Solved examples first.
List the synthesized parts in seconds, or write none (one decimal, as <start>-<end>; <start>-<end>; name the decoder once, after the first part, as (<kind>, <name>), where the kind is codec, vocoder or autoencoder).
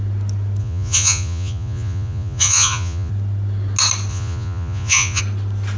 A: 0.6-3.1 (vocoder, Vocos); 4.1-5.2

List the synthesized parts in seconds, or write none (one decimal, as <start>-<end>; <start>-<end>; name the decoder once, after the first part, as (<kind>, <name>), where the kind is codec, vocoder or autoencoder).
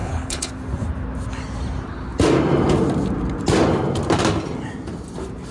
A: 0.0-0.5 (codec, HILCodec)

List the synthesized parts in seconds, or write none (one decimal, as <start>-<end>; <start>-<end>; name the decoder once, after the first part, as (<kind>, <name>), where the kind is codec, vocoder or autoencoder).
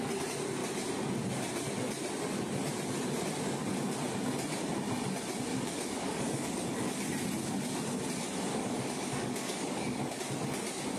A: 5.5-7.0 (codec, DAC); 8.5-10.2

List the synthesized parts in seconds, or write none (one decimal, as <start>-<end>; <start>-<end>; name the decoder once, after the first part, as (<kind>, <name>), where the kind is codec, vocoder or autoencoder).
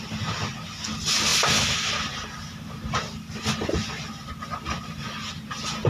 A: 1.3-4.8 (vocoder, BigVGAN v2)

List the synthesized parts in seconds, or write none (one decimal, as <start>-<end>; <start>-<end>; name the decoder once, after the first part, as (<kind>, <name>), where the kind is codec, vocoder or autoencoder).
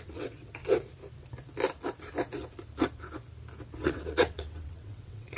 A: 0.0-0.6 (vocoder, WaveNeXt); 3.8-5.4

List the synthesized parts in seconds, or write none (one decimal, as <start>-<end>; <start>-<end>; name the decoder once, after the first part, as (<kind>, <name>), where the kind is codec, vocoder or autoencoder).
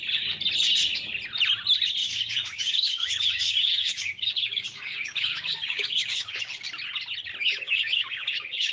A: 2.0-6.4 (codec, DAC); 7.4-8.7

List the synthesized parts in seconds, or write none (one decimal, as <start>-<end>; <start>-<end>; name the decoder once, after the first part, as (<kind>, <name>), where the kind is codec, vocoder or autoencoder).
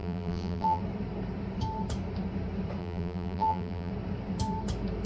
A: 0.0-0.8 (vocoder, BigVGAN v2); 2.8-3.9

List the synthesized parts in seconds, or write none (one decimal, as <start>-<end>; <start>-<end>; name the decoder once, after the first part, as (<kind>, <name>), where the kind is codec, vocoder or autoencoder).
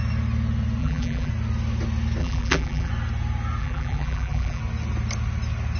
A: 0.8-1.3 (vocoder, BigVGAN v2); 2.2-2.9; 3.6-4.6